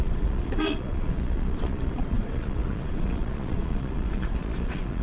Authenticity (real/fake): fake